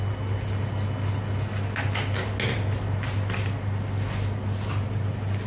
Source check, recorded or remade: recorded